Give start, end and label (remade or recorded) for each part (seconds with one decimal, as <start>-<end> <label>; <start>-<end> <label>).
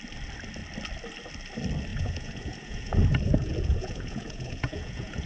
0.0-1.9 recorded; 1.9-5.3 remade